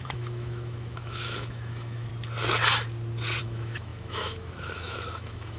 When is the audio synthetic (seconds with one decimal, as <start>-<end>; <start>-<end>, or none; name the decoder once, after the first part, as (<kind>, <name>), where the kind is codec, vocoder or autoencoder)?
0.0-2.1 (autoencoder, DAC-VAE); 3.4-5.6